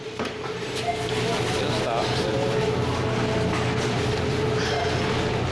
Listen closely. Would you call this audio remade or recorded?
recorded